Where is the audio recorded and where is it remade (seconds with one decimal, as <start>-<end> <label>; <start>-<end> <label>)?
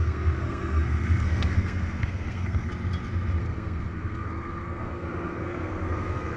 0.0-2.7 remade; 2.7-3.4 recorded; 3.4-6.4 remade